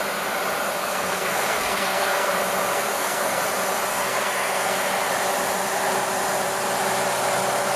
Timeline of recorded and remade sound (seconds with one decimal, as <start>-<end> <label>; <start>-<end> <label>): 0.0-0.8 recorded; 0.8-2.3 remade; 2.3-2.7 recorded; 2.7-3.4 remade; 3.4-3.9 recorded; 3.9-4.9 remade; 4.9-7.8 recorded